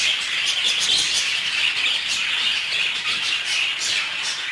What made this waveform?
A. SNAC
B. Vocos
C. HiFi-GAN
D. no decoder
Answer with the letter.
D